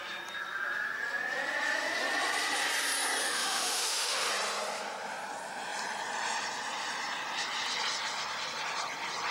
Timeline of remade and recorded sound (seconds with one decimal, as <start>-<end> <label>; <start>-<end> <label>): 0.0-3.2 recorded; 3.2-4.3 remade; 4.3-9.3 recorded